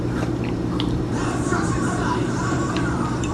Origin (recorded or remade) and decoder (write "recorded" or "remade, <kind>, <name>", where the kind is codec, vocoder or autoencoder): remade, vocoder, BigVGAN v2